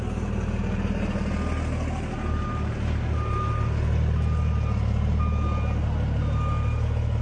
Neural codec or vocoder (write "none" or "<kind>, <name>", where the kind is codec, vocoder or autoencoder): none